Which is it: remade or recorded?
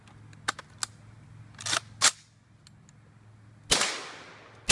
recorded